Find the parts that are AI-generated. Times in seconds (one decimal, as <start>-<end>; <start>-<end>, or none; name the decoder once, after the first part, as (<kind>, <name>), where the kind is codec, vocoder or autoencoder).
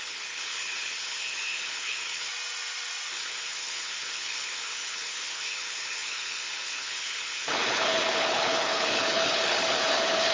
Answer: 0.0-2.3 (codec, HILCodec); 3.1-10.3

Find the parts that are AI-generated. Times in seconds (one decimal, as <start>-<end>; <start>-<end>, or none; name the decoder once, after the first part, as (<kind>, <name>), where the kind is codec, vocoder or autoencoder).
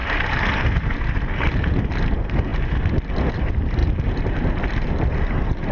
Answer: 1.4-2.5 (vocoder, BigVGAN v2); 3.3-5.7